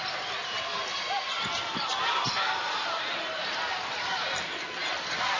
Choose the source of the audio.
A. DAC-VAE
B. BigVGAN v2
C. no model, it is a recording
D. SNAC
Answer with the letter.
B